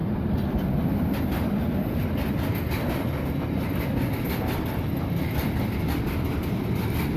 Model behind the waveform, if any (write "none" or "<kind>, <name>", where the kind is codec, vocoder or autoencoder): none